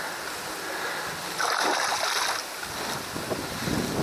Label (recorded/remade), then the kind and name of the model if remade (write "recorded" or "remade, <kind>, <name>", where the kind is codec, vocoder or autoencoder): recorded